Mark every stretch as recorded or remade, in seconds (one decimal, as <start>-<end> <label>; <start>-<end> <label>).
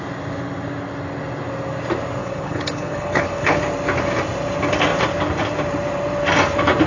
0.0-2.2 recorded; 2.2-3.6 remade; 3.6-6.9 recorded